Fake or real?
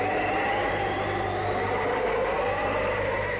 real